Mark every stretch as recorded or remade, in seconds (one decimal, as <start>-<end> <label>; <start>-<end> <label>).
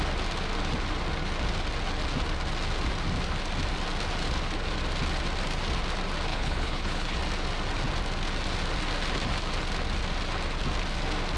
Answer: 0.0-6.3 recorded; 6.3-7.2 remade; 7.2-11.4 recorded